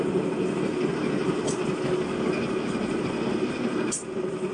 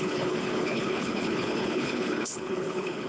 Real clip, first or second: first